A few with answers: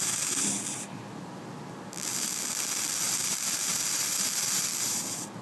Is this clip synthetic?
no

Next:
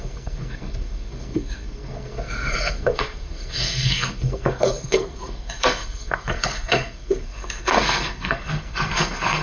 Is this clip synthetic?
yes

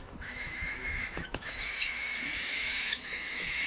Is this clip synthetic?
yes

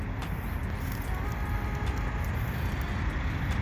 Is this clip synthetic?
no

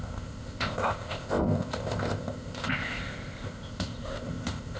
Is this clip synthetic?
yes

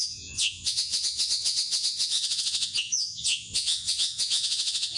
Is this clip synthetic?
yes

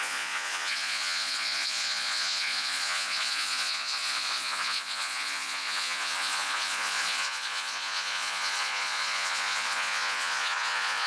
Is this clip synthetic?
yes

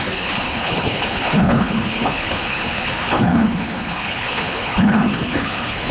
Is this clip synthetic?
yes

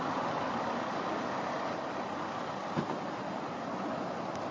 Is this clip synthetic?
no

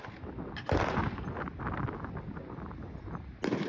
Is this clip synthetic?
no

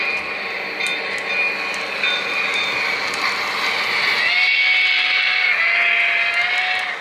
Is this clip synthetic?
no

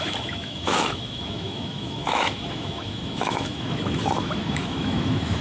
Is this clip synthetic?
yes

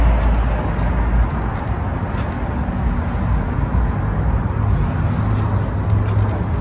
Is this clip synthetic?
no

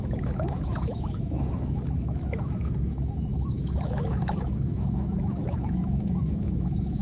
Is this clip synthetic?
yes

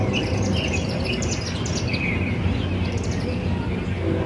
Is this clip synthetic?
no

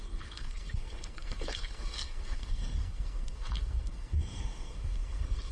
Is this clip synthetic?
yes